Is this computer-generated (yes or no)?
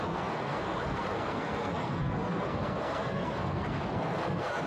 yes